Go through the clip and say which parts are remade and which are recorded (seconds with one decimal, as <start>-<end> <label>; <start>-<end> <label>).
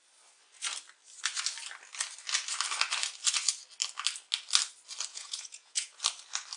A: 0.0-5.1 recorded; 5.1-6.0 remade; 6.0-6.6 recorded